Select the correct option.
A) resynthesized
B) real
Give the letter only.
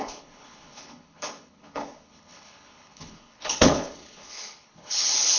A